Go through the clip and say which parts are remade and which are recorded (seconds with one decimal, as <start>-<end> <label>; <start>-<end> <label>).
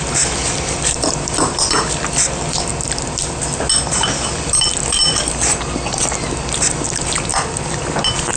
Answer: 0.0-0.4 recorded; 0.4-1.2 remade; 1.2-7.3 recorded; 7.3-8.0 remade; 8.0-8.4 recorded